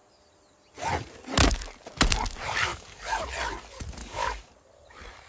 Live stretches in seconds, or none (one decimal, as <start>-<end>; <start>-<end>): 0.0-2.7; 3.3-4.0; 4.5-5.3